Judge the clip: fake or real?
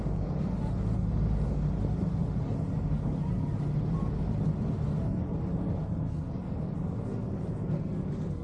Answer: real